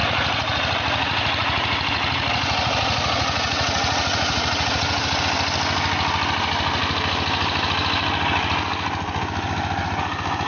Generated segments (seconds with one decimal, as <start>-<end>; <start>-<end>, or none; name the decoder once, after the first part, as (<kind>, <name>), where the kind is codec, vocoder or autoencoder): 0.0-5.2 (vocoder, Vocos)